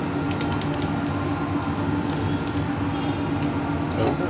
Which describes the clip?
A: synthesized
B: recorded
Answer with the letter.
B